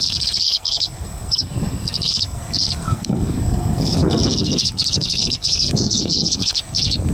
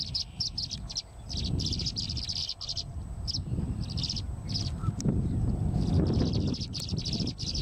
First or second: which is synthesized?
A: first